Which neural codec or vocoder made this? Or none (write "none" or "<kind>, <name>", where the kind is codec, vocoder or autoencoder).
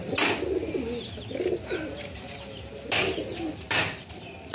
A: none